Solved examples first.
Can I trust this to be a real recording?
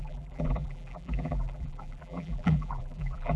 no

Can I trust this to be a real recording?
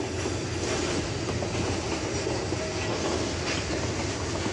yes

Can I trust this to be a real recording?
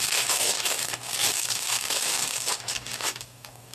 no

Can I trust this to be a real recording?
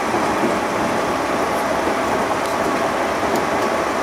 yes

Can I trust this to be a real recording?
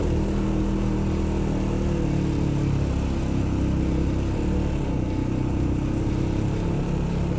yes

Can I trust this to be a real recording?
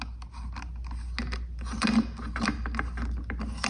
yes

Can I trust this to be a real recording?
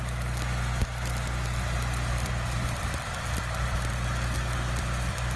yes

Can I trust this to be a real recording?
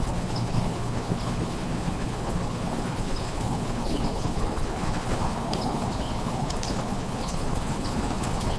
no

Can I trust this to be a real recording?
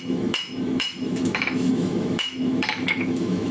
no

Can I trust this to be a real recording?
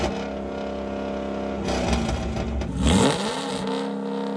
yes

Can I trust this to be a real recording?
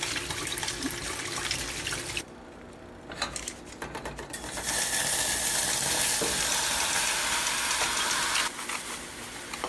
yes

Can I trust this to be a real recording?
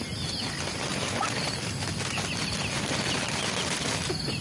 yes